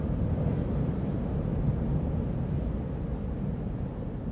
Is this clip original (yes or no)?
yes